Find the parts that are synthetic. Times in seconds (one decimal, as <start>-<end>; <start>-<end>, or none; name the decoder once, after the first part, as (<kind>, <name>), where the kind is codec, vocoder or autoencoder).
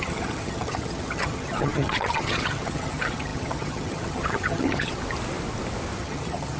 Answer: 0.0-5.0 (vocoder, HiFi-GAN); 6.0-6.6